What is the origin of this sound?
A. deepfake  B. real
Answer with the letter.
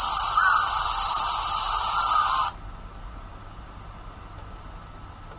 B